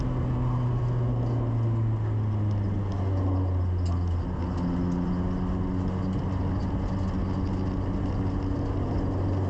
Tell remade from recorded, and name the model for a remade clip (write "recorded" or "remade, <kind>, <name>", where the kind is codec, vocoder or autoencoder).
recorded